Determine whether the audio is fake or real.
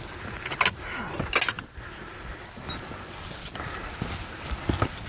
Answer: real